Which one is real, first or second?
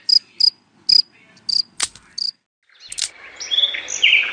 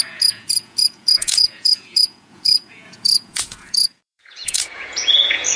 first